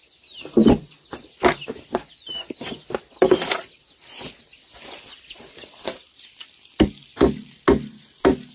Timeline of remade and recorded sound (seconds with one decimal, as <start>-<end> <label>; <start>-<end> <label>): 0.0-8.5 recorded